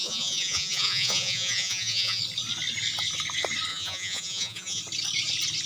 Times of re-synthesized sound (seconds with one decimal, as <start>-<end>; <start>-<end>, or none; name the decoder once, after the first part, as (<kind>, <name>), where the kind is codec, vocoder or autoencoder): 0.0-2.2 (vocoder, Vocos); 3.7-4.8